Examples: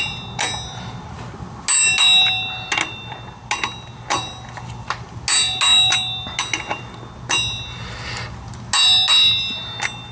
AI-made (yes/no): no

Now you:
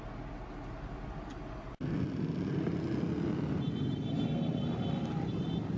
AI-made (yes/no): no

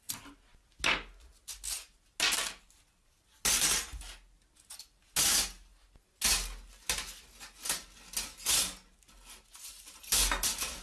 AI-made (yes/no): no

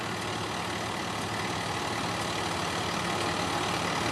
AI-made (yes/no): no